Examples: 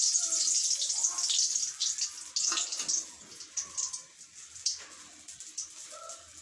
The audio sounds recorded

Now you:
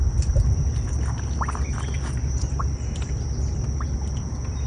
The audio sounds recorded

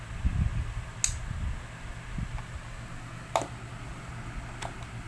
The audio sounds recorded